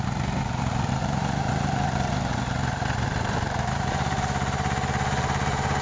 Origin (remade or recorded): remade